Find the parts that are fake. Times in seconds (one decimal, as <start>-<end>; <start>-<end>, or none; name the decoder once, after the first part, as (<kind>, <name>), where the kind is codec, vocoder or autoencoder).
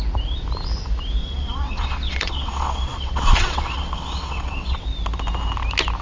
1.2-4.8 (vocoder, WaveNeXt)